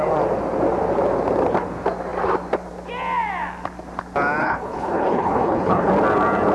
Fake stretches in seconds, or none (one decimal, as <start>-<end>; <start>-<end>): 4.4-5.9